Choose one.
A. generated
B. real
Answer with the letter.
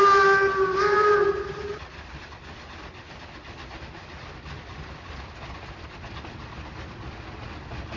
B